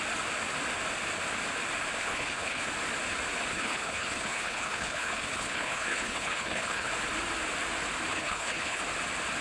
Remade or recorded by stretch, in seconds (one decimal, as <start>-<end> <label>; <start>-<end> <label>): 0.0-2.0 recorded; 2.0-2.7 remade; 2.7-3.5 recorded; 3.5-6.9 remade; 6.9-8.1 recorded; 8.1-8.8 remade; 8.8-9.4 recorded